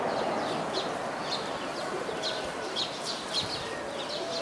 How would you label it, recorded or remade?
recorded